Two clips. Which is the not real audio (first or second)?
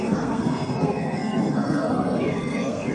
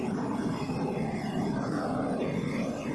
first